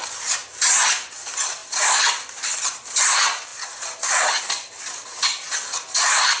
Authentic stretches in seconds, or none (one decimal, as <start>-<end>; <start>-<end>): 0.0-6.4